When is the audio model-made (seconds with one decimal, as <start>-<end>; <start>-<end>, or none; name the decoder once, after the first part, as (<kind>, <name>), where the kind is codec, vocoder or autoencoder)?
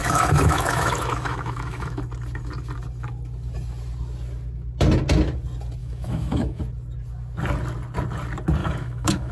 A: 0.0-2.0 (autoencoder, DAC-VAE); 5.8-6.6; 8.6-9.3